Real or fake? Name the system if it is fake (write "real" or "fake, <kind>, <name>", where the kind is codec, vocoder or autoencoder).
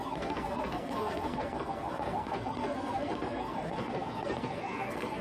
fake, codec, SNAC